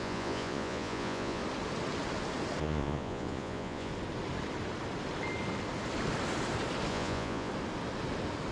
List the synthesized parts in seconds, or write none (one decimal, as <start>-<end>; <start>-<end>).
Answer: 0.0-1.4; 2.6-3.9; 6.9-7.5